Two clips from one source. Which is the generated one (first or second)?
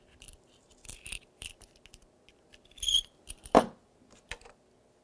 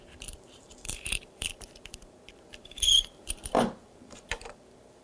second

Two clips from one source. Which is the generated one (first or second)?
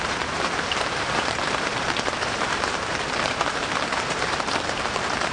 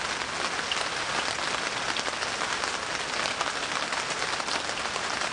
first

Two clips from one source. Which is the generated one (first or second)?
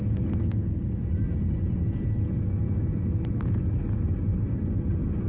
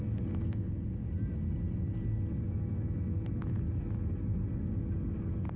first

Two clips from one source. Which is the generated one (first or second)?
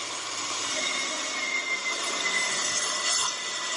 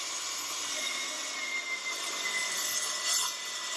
first